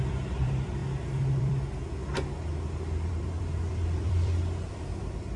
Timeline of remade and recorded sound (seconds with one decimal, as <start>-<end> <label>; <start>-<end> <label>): 0.0-0.8 remade; 0.8-1.4 recorded; 1.4-2.0 remade; 2.0-3.1 recorded; 3.1-5.4 remade